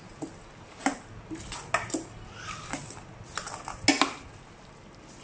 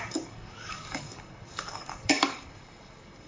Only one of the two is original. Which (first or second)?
first